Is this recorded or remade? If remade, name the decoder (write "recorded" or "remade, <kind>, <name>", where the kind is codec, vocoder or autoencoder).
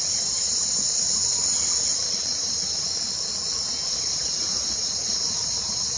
recorded